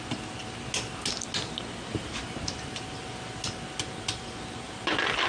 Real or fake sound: real